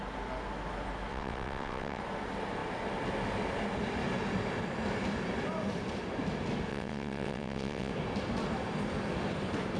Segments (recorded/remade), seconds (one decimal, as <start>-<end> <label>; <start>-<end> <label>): 0.0-1.1 recorded; 1.1-2.0 remade; 2.0-6.7 recorded; 6.7-7.9 remade; 7.9-9.8 recorded